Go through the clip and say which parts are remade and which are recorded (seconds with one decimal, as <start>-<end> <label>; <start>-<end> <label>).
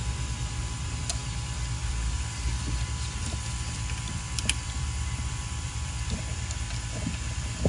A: 0.0-0.6 recorded; 0.6-1.2 remade; 1.2-1.9 recorded; 1.9-7.7 remade